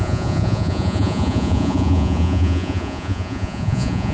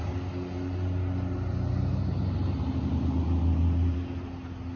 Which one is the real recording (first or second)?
second